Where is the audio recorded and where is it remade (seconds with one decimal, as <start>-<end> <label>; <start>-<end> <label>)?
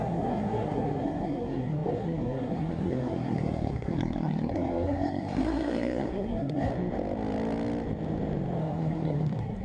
0.0-6.7 remade; 6.7-8.6 recorded; 8.6-9.6 remade